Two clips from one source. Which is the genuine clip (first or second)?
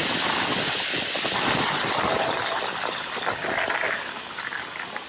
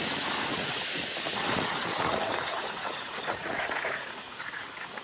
first